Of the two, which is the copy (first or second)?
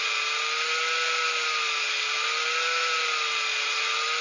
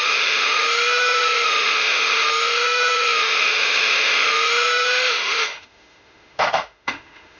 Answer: second